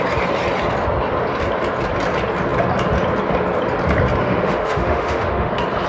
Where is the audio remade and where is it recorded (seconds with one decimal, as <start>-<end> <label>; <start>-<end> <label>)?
0.0-4.2 recorded; 4.2-5.5 remade; 5.5-5.9 recorded